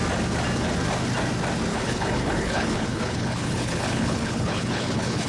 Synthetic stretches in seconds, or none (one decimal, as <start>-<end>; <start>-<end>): 1.7-5.3